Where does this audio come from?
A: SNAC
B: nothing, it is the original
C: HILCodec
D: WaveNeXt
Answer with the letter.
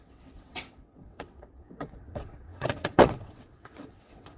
D